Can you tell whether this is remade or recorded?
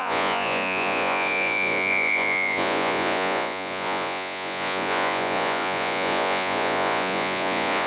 remade